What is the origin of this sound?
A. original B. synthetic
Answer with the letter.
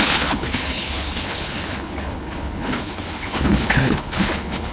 B